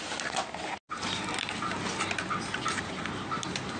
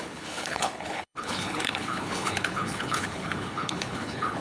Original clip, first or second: first